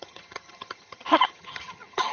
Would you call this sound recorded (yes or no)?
no